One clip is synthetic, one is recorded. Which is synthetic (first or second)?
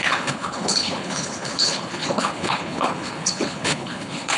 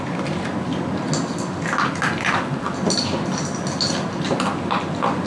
first